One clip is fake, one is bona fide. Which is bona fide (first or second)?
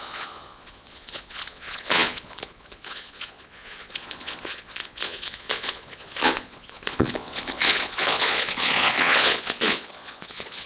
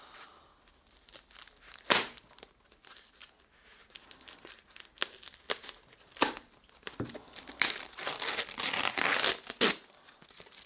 second